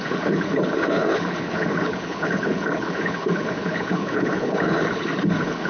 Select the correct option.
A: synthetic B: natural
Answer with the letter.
A